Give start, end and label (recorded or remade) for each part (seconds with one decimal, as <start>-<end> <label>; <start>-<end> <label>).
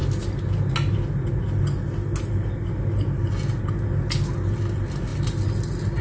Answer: 0.0-6.0 recorded